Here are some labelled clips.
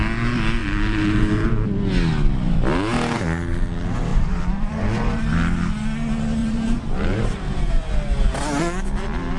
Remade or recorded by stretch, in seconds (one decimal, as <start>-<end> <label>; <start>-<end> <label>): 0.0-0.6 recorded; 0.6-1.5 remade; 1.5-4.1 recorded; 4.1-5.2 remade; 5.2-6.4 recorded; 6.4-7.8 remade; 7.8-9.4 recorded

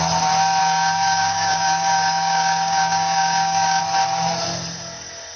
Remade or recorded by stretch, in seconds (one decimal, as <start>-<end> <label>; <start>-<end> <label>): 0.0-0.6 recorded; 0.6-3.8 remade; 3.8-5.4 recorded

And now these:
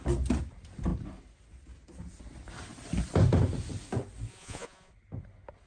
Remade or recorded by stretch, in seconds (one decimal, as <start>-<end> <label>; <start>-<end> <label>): 0.0-4.3 recorded; 4.3-4.9 remade; 4.9-5.7 recorded

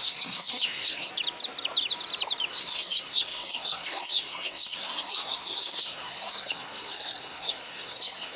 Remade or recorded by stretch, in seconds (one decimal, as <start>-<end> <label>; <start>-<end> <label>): 0.0-1.1 remade; 1.1-2.5 recorded; 2.5-8.4 remade

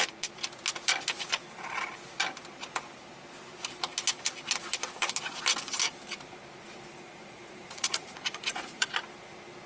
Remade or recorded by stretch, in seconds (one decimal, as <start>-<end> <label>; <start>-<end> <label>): 0.0-6.9 recorded; 6.9-8.9 remade; 8.9-9.7 recorded

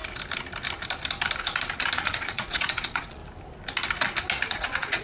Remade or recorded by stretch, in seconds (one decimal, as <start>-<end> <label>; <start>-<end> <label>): 0.0-1.9 recorded; 1.9-3.2 remade; 3.2-4.5 recorded; 4.5-5.0 remade